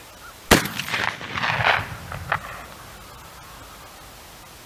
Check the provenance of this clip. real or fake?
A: real